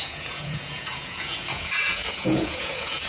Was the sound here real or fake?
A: fake